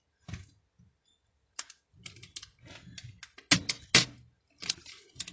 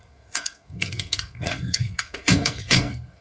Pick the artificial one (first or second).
second